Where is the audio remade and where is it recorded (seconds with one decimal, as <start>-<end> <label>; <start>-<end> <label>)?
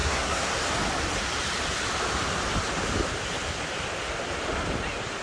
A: 0.0-0.5 remade; 0.5-5.2 recorded